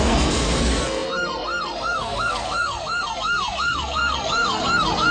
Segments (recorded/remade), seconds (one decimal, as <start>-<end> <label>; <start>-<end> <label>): 0.0-5.1 remade

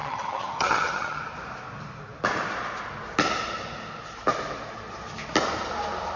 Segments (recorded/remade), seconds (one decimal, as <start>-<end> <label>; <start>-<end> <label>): 0.0-1.2 remade; 1.2-6.2 recorded